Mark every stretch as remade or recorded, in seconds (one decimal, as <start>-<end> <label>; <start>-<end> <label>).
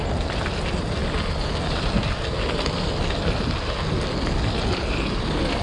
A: 0.0-5.6 recorded